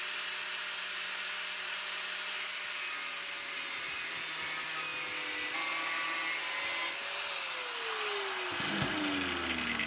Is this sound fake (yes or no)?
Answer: no